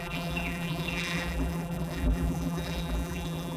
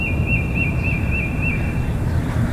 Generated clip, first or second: first